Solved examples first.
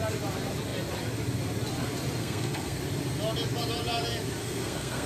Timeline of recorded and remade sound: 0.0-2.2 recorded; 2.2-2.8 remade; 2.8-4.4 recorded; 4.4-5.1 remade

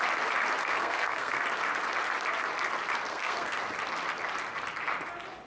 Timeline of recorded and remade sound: 0.0-0.6 recorded; 0.6-1.4 remade; 1.4-3.1 recorded; 3.1-3.6 remade; 3.6-5.5 recorded

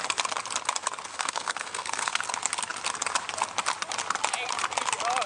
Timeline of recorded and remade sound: 0.0-1.1 recorded; 1.1-2.2 remade; 2.2-5.3 recorded

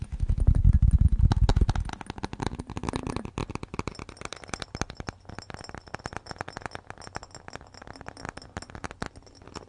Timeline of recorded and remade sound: 0.0-9.7 recorded

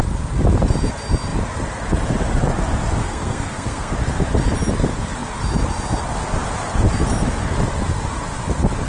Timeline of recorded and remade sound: 0.0-3.0 recorded; 3.0-3.9 remade; 3.9-8.9 recorded